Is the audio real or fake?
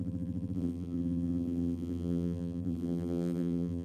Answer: fake